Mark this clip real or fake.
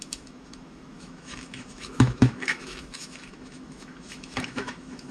fake